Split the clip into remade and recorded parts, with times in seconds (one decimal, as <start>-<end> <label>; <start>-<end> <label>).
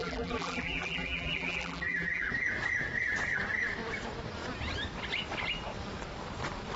0.0-2.3 remade; 2.3-6.8 recorded